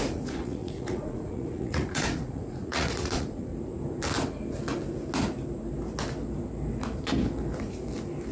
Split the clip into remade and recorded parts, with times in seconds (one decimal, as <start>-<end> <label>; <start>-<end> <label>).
0.0-3.5 remade; 3.5-8.3 recorded